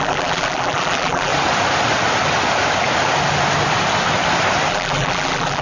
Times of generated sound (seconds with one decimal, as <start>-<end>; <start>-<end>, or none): 0.0-1.3; 4.7-5.6